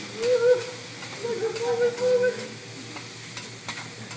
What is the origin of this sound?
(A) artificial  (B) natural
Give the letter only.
B